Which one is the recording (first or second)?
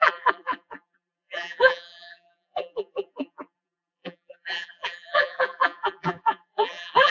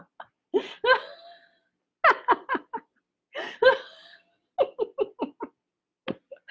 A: second